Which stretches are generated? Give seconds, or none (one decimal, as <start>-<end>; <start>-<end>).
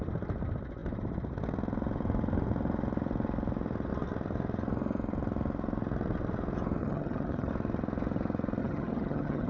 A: 6.8-7.5; 8.6-9.5